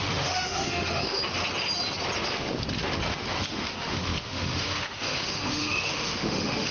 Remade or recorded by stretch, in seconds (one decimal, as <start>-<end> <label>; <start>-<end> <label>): 0.0-1.2 remade; 1.2-3.5 recorded; 3.5-6.7 remade